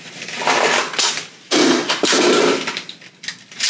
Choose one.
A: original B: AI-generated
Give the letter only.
A